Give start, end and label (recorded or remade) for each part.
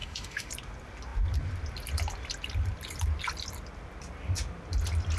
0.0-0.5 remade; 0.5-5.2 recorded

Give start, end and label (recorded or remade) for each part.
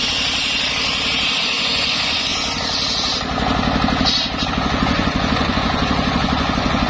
0.0-1.4 recorded; 1.4-2.3 remade; 2.3-4.5 recorded; 4.5-6.9 remade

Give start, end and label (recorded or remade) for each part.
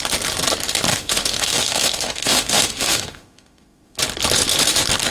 0.0-0.9 recorded; 0.9-4.0 remade; 4.0-5.1 recorded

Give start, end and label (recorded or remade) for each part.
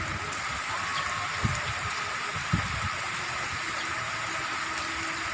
0.0-5.3 recorded